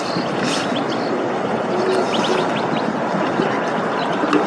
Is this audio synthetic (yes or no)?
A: no